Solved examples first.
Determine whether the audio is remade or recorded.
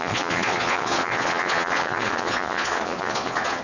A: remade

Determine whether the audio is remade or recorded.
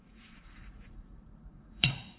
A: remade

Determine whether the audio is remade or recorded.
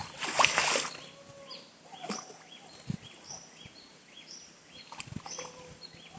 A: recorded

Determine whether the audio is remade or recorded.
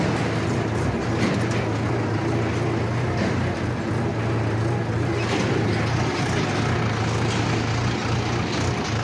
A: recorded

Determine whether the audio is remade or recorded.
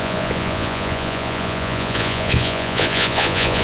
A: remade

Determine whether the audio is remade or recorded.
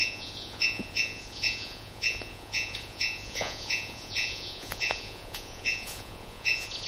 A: remade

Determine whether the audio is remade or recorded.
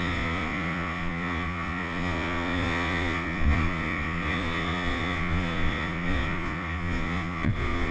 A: remade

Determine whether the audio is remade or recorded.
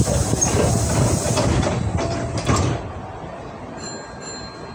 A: recorded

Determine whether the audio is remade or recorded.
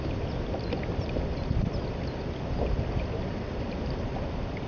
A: recorded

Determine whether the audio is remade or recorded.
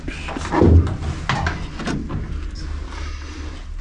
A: recorded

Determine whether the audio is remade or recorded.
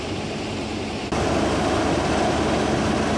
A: recorded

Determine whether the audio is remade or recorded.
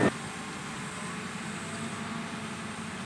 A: recorded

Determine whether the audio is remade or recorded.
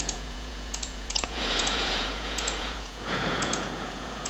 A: remade